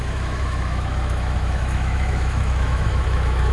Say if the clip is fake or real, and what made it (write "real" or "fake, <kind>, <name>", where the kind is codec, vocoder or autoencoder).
fake, autoencoder, DAC-VAE